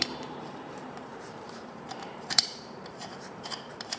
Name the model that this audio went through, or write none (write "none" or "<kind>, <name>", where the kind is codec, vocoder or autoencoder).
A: vocoder, BigVGAN v2